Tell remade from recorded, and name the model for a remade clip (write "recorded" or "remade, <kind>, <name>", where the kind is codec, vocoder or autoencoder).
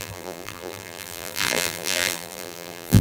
remade, vocoder, BigVGAN v2